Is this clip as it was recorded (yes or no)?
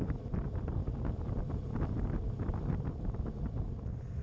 yes